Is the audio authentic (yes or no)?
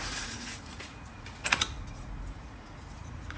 no